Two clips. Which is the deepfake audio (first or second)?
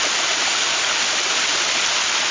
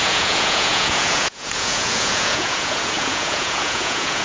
second